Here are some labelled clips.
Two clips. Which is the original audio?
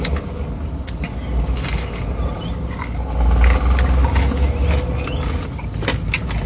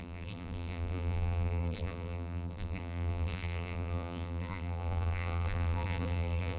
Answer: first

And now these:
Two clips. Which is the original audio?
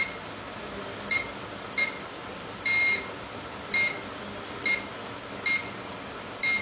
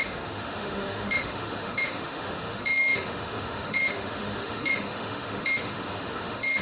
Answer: first